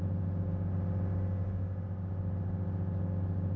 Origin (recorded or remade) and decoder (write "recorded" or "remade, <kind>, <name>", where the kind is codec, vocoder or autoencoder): recorded